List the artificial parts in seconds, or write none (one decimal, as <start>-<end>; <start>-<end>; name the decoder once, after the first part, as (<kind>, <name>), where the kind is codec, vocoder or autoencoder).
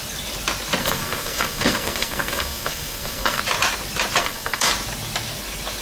0.8-3.4 (codec, SNAC); 4.2-4.7